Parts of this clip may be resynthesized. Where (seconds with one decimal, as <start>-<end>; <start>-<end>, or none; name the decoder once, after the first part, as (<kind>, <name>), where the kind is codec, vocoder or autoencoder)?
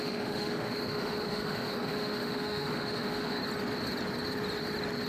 0.0-3.4 (autoencoder, DAC-VAE)